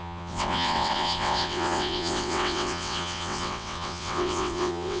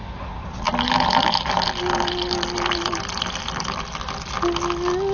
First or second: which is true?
second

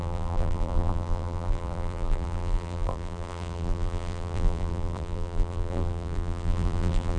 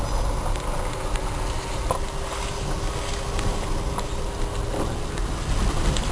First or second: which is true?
second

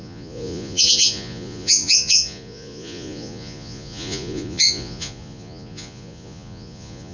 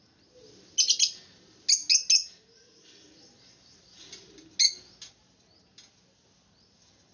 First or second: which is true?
second